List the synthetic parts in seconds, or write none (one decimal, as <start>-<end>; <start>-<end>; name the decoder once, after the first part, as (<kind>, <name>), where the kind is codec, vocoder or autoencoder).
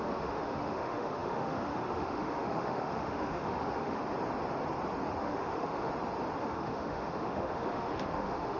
0.0-4.0 (autoencoder, DAC-VAE); 5.2-5.9; 6.4-8.6